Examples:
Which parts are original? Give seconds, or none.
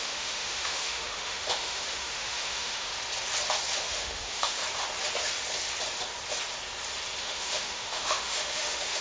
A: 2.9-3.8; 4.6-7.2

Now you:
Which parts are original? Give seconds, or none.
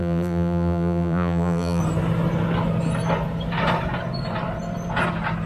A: 1.8-5.5